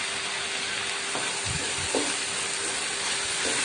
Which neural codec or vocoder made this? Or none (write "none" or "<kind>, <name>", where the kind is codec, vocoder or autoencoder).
none